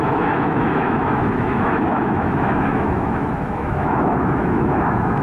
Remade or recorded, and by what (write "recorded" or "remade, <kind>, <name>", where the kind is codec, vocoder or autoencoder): remade, autoencoder, DAC-VAE